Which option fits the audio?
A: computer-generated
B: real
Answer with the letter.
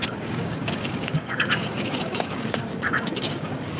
A